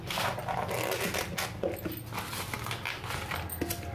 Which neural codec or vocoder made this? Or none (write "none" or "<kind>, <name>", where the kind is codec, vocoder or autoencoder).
none